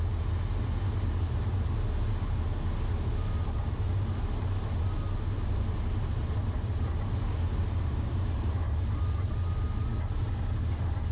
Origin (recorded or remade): recorded